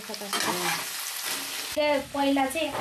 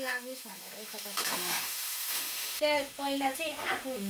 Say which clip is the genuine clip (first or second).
first